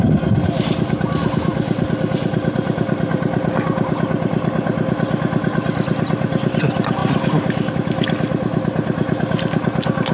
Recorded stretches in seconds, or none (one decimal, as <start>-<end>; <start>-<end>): 0.0-10.1